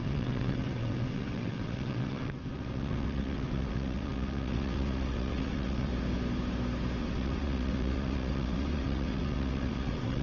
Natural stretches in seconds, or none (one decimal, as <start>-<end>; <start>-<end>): 5.9-7.0